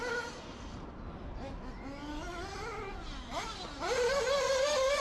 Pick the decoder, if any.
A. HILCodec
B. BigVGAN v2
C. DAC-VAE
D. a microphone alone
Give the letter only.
D